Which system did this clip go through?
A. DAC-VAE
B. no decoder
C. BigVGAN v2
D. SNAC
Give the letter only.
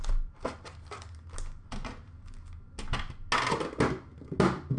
B